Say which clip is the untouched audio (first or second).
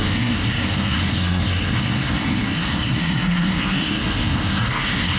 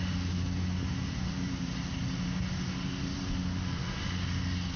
second